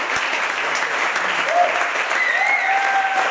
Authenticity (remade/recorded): recorded